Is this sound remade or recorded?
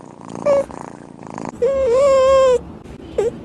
recorded